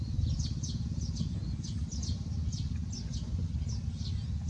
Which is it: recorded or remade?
recorded